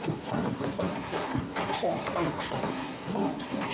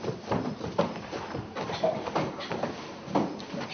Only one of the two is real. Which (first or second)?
second